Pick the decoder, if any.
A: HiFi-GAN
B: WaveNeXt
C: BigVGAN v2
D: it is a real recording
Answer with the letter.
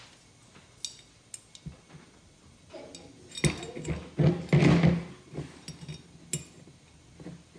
D